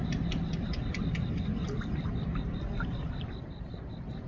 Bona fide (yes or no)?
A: yes